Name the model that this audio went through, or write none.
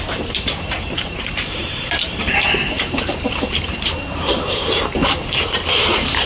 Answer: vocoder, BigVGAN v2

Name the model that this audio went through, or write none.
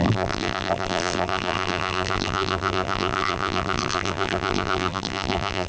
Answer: vocoder, BigVGAN v2